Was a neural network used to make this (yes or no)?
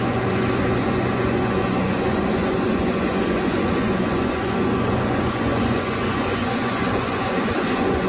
yes